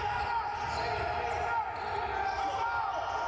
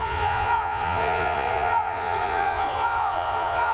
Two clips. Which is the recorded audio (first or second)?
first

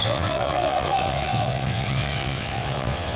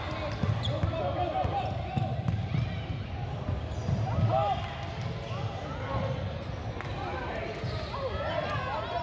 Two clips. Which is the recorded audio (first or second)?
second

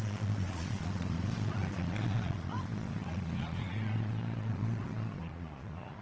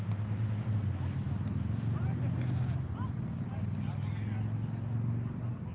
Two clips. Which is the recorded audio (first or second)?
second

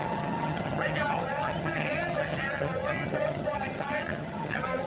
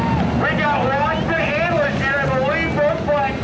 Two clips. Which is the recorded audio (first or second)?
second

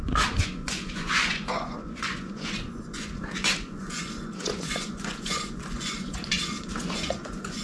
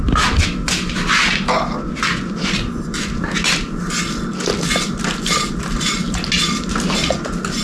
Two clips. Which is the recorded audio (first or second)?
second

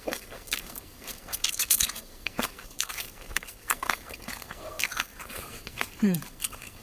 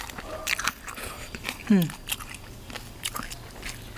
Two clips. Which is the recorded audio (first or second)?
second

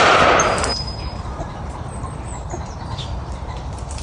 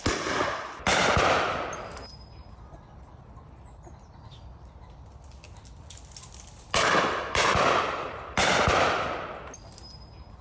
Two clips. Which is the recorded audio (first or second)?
second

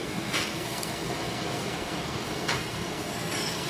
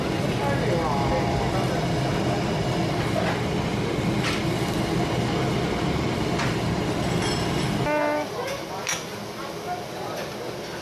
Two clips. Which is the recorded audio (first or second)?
second